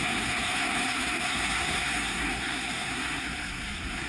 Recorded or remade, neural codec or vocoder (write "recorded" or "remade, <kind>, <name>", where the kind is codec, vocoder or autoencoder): remade, codec, SNAC